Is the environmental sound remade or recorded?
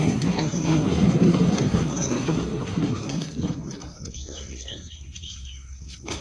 remade